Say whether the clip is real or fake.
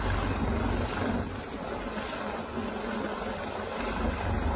real